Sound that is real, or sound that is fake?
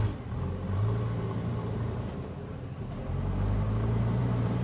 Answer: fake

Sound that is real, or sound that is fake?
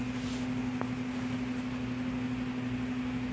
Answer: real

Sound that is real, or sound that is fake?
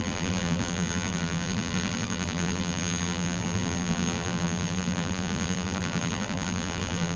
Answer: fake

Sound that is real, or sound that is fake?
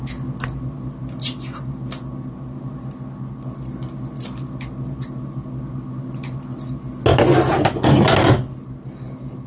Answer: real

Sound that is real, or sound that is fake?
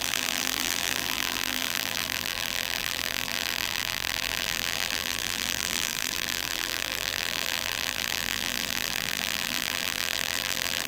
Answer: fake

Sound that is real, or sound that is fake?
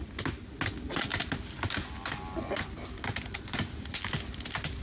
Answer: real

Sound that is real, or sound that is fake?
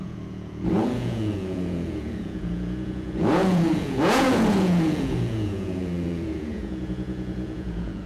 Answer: fake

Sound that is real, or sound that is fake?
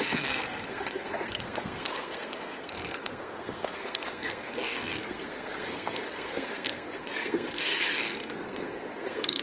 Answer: fake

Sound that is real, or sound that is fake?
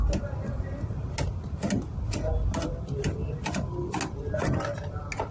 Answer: real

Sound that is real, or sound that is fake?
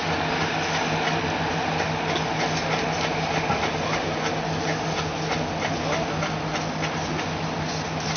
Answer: real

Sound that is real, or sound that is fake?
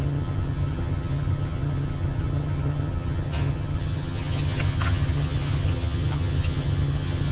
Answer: fake